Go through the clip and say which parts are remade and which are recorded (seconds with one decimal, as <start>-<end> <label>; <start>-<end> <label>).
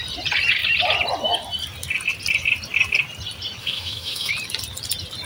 0.0-3.6 recorded; 3.6-4.3 remade; 4.3-5.2 recorded